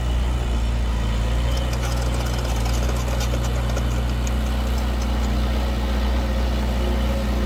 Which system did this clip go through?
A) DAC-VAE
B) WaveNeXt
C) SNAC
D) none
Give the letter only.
D